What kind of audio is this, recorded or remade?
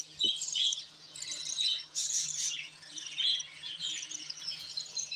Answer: remade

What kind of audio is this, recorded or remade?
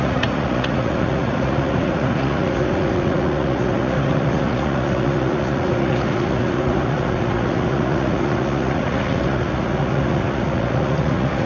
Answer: remade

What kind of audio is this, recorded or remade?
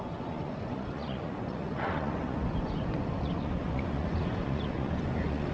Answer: remade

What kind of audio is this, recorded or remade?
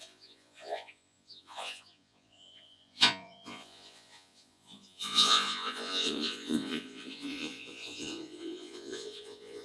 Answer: remade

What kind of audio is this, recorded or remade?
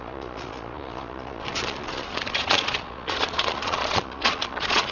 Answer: remade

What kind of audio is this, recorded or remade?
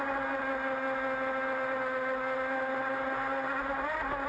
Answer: recorded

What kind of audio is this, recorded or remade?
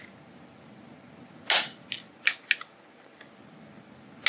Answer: recorded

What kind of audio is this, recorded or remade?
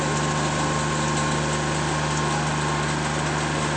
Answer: recorded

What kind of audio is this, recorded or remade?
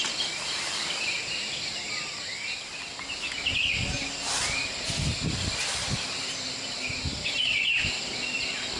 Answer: recorded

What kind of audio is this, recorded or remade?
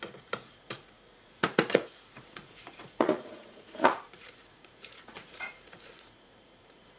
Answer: remade